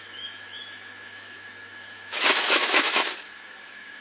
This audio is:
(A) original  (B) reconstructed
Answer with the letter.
B